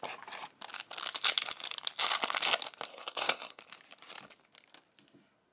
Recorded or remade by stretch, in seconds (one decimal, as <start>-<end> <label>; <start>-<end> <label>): 0.0-2.9 recorded; 2.9-3.6 remade; 3.6-5.5 recorded